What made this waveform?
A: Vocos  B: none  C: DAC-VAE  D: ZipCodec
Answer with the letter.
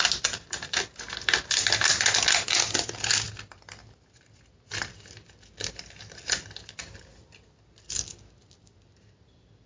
B